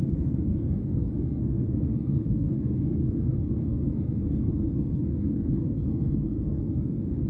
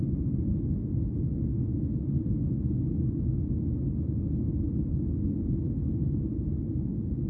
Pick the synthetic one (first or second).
first